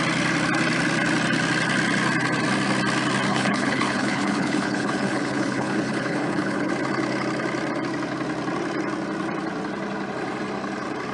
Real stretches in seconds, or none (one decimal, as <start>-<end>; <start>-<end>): 0.0-3.3; 6.7-11.1